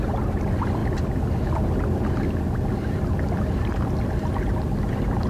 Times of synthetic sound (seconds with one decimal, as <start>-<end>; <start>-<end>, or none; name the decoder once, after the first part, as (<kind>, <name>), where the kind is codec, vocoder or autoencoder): none